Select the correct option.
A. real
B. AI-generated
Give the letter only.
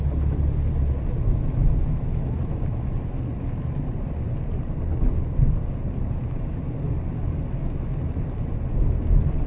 A